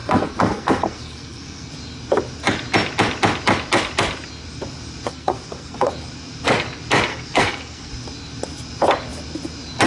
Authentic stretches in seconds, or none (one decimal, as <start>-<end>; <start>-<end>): 1.7-5.1; 5.9-7.1; 7.9-9.9